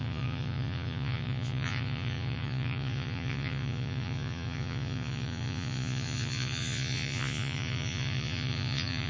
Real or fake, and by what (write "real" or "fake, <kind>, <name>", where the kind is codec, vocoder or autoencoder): fake, vocoder, Vocos